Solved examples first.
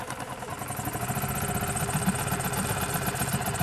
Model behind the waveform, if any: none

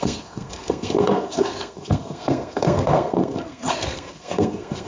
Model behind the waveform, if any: codec, SNAC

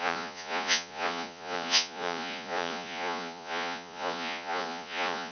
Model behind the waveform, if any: vocoder, Vocos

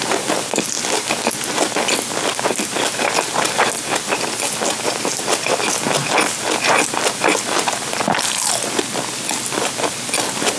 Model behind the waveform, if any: none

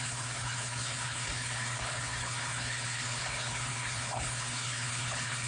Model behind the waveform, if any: codec, HILCodec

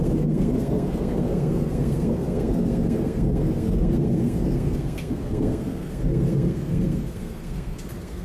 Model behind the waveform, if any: codec, SNAC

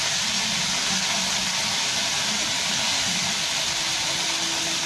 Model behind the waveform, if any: none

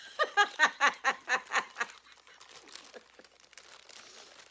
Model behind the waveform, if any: none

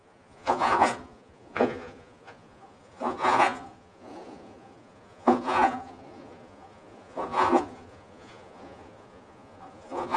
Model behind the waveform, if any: vocoder, Vocos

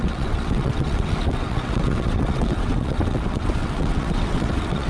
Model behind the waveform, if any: vocoder, WaveNeXt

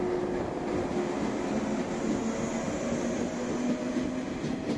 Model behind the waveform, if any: none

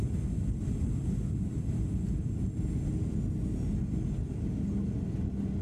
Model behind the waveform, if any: none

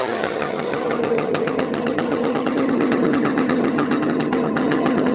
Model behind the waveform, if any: vocoder, HiFi-GAN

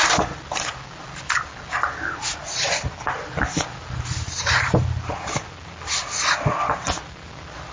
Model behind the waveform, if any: none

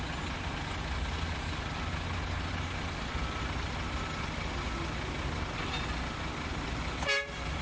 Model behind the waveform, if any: none